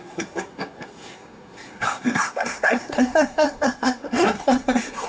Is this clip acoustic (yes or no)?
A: no